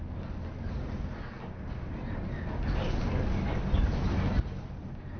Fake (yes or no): no